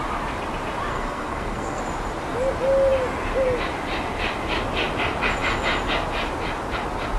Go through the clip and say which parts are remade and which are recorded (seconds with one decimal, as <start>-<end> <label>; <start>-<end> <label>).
0.0-0.9 recorded; 0.9-1.8 remade; 1.8-7.2 recorded

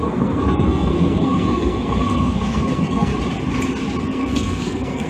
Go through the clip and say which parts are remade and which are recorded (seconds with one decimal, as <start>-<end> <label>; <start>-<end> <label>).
0.0-3.1 remade; 3.1-4.0 recorded; 4.0-5.1 remade

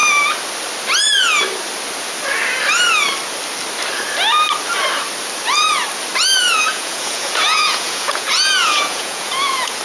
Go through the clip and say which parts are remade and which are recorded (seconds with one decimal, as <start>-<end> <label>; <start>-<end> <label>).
0.0-6.4 recorded; 6.4-9.8 remade

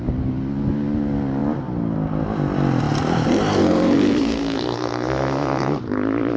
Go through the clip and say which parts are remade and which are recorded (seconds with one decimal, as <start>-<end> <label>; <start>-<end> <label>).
0.0-3.5 recorded; 3.5-5.8 remade; 5.8-6.4 recorded